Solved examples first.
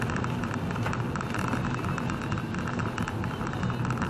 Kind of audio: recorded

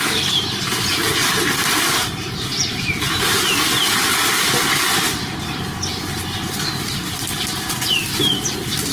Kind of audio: remade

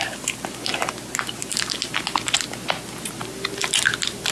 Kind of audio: recorded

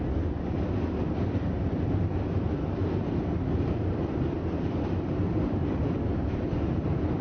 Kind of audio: remade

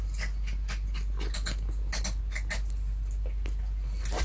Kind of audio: recorded